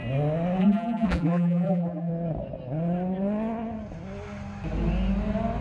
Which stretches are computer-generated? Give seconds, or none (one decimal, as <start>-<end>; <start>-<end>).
0.6-2.1